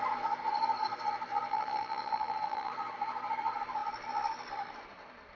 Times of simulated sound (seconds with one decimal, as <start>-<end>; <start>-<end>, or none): 1.5-2.7

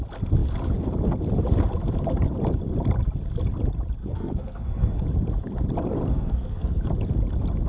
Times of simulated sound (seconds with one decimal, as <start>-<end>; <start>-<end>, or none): 4.0-5.0; 6.1-6.8

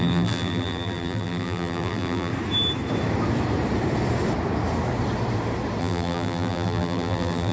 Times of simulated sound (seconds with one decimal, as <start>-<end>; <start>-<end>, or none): 0.0-2.3; 5.8-7.5

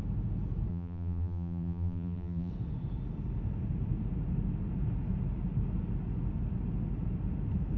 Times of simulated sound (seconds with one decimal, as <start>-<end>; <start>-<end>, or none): 0.7-2.5

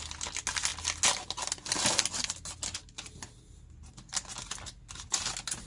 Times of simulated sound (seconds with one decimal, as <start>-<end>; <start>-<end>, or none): none